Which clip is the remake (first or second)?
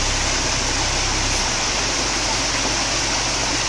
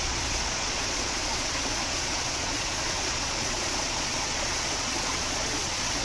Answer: second